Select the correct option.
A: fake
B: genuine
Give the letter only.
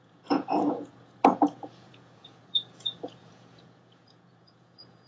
A